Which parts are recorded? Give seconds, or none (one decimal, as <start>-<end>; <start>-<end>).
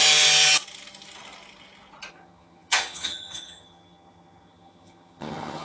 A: 0.0-2.1